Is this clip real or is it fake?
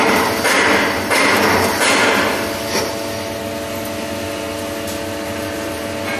real